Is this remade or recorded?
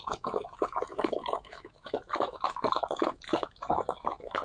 remade